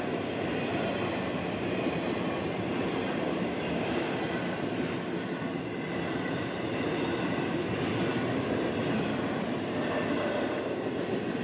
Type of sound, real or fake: real